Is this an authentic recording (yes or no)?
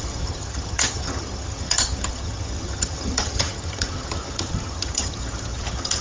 no